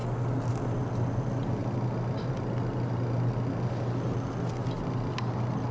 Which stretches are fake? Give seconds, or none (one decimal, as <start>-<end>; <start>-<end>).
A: none